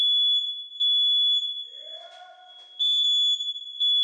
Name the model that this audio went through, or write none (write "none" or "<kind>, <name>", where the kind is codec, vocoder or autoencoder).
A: none